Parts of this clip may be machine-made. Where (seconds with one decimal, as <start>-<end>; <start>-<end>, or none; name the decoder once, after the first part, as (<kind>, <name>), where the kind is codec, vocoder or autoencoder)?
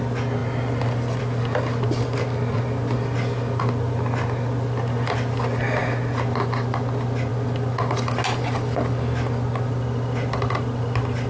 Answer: none